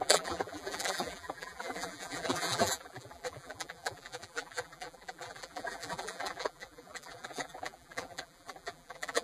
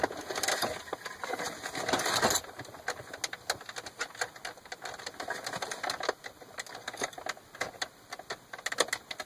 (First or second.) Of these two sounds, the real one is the second